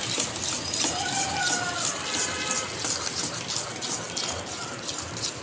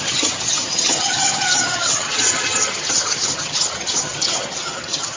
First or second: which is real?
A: first